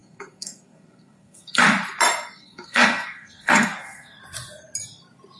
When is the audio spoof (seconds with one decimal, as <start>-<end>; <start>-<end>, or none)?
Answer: 0.0-1.6; 2.4-4.2